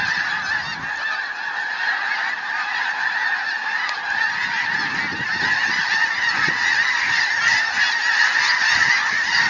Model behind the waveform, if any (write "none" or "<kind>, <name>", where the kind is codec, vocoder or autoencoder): none